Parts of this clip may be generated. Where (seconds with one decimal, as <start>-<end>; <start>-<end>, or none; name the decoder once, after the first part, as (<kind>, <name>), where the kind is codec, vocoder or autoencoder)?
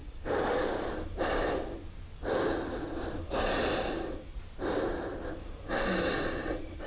0.0-0.9 (codec, DAC)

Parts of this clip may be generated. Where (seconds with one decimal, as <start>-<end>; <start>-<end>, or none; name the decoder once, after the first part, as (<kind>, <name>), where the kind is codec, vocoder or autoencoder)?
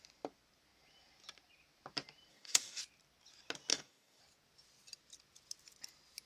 2.3-2.8 (codec, DAC); 3.7-4.2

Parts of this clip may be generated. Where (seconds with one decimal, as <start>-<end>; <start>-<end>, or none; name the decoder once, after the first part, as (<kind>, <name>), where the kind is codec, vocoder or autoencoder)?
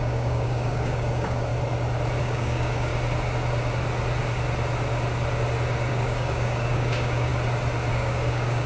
0.0-1.5 (codec, DAC); 2.2-2.9; 5.9-7.3; 7.9-8.7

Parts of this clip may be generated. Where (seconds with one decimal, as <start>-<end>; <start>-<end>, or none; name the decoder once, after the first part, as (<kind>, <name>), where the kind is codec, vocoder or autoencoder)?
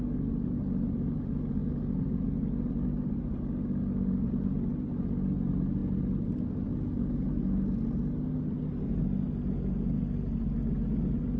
none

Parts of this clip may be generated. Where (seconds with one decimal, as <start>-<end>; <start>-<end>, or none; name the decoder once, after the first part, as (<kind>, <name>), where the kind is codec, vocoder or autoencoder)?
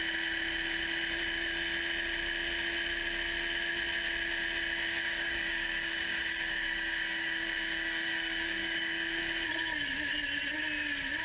5.0-9.2 (codec, DAC)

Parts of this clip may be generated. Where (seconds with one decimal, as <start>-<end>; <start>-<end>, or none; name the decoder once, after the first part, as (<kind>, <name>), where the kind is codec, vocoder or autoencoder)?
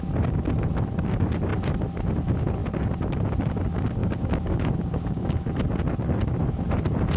4.0-5.5 (codec, DAC)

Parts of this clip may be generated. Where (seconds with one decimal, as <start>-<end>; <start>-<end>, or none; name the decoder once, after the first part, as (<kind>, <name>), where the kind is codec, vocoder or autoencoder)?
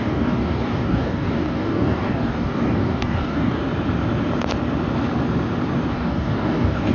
0.0-3.6 (codec, DAC); 5.9-6.9